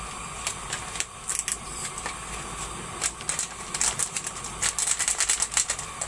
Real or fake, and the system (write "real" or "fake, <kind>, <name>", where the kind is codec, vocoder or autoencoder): real